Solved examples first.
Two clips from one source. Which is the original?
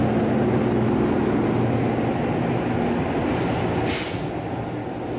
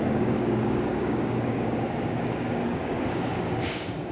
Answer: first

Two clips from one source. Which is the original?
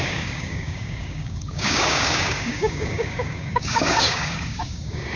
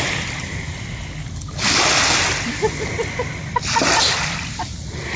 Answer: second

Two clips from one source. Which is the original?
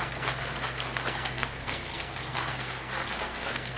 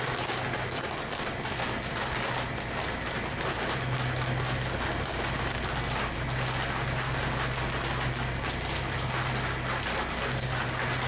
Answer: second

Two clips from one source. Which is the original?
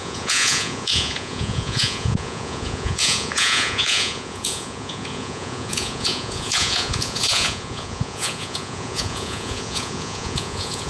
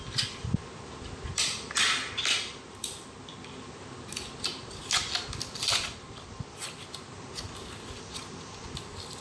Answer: second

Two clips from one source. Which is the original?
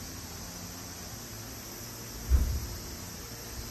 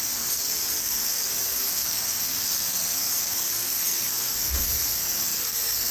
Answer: first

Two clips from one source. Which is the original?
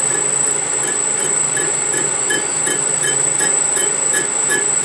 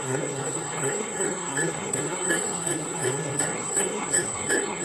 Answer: first